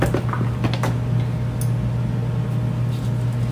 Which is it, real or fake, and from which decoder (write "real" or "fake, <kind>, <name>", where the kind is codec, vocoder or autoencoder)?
real